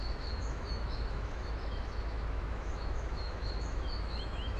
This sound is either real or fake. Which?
fake